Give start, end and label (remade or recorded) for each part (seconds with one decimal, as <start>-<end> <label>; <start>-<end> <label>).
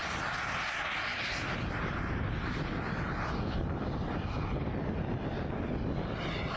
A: 0.0-6.6 recorded